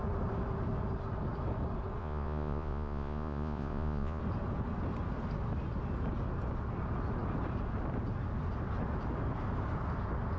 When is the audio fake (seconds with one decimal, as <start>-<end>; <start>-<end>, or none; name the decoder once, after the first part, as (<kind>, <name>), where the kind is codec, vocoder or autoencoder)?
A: 2.0-4.2 (vocoder, Vocos)